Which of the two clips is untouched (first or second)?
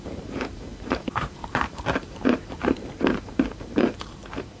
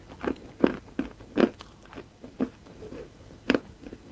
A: second